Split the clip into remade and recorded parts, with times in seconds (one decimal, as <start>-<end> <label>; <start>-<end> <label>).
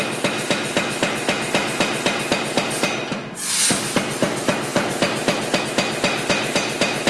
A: 0.0-7.1 recorded